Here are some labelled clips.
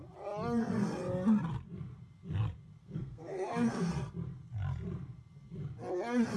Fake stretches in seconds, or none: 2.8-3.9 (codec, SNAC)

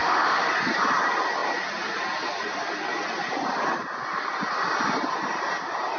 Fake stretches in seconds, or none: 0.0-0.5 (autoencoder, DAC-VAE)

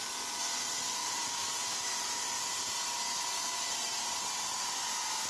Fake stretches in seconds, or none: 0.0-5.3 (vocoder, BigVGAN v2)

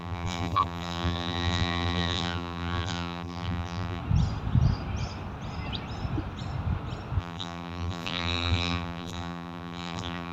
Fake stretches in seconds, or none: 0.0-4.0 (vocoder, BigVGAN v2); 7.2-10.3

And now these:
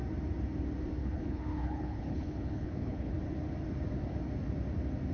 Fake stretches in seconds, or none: 1.0-3.1 (codec, HILCodec)

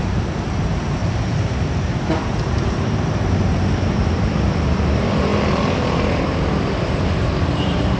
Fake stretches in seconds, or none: 0.0-1.0 (vocoder, BigVGAN v2); 2.2-5.3; 6.1-8.0